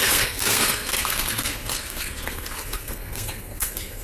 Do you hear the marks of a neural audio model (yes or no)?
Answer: yes